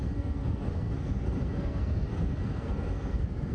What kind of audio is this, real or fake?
fake